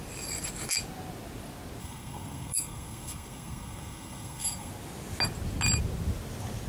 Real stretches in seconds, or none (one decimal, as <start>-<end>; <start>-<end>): 0.0-1.8; 4.7-6.7